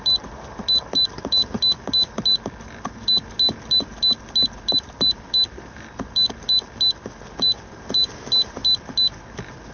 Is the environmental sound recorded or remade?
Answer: recorded